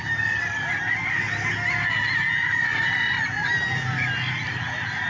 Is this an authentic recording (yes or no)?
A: yes